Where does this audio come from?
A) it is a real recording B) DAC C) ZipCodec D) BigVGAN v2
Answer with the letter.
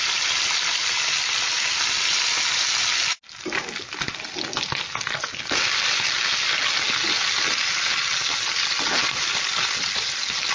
A